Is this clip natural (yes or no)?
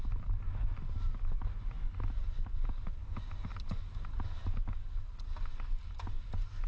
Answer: yes